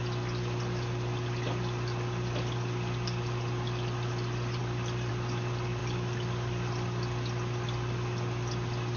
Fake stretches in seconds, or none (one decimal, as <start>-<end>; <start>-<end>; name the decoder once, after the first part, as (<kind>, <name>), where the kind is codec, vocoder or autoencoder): none